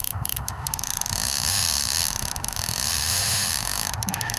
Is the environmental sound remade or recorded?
remade